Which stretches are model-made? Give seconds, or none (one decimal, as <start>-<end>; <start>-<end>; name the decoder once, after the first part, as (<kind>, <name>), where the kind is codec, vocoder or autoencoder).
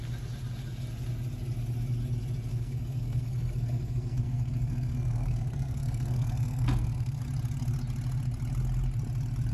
2.5-7.2 (codec, SNAC)